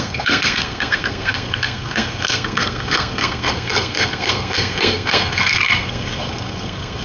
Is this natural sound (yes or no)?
no